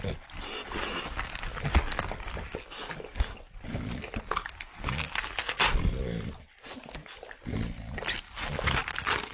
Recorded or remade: recorded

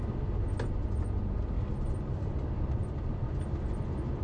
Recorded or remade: recorded